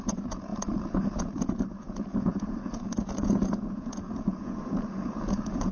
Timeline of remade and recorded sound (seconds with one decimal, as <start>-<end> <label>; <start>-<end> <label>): 0.0-5.7 remade